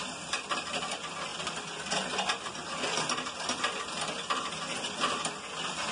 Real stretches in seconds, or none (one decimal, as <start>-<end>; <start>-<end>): 0.0-5.9